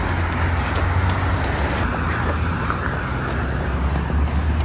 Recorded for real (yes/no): yes